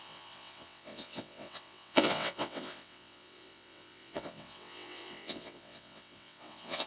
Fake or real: fake